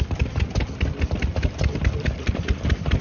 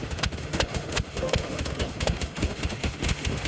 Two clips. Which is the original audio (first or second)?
first